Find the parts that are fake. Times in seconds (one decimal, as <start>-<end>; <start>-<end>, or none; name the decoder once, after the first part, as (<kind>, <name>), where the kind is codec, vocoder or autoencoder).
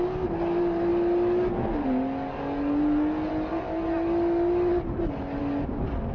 none